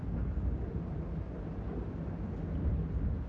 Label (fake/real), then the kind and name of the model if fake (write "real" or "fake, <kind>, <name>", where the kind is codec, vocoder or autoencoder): real